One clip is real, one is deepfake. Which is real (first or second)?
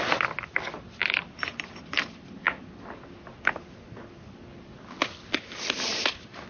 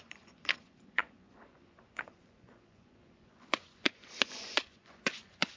first